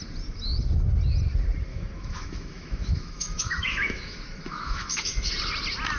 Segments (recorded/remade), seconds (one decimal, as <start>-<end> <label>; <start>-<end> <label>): 0.0-1.7 recorded; 1.7-5.3 remade; 5.3-6.0 recorded